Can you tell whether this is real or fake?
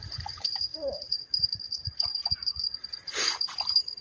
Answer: fake